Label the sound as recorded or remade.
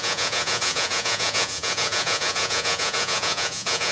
remade